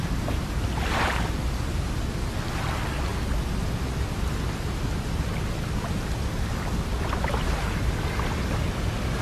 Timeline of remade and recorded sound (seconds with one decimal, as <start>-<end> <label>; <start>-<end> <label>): 0.0-9.2 recorded